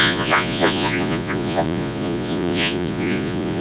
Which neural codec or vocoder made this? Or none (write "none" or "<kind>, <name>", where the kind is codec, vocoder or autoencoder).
vocoder, Vocos